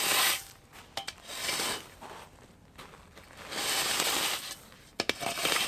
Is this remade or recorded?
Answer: recorded